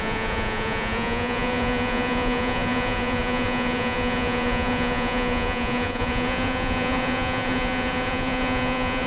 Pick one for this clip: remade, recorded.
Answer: remade